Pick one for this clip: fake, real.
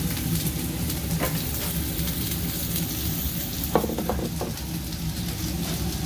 real